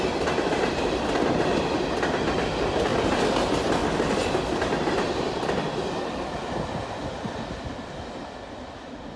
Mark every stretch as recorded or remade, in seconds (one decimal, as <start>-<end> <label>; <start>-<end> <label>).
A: 0.0-9.2 recorded